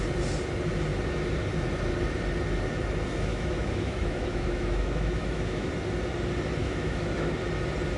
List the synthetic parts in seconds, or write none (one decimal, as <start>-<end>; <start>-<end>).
3.3-5.7; 6.6-7.3

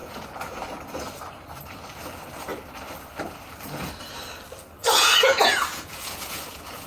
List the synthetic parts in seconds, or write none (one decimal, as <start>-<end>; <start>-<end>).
0.0-0.6; 4.8-6.9

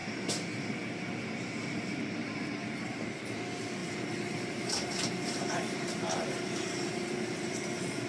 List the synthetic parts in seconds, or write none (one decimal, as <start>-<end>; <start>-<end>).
0.0-2.8; 3.8-7.5